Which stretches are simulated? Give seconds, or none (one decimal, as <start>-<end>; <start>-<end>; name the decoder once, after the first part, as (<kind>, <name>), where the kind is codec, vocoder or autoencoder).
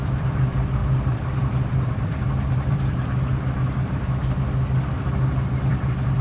0.0-3.3 (vocoder, BigVGAN v2); 5.3-6.2